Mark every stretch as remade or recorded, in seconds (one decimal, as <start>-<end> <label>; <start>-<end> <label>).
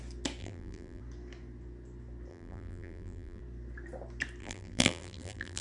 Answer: 0.0-0.4 recorded; 0.4-1.0 remade; 1.0-2.3 recorded; 2.3-3.4 remade; 3.4-4.4 recorded; 4.4-5.6 remade